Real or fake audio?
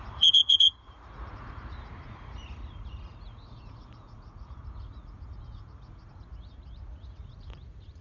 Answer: fake